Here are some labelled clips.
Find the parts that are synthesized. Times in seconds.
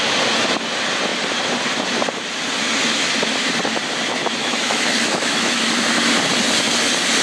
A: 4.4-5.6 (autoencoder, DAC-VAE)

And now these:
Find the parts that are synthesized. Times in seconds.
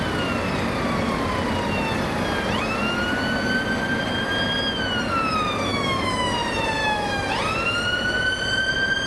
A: 5.7-6.3 (autoencoder, DAC-VAE); 6.8-7.3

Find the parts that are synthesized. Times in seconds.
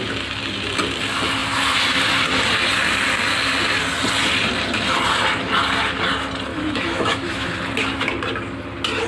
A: 6.5-7.5 (autoencoder, DAC-VAE)